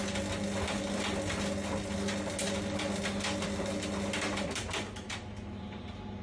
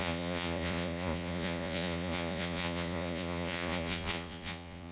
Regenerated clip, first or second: second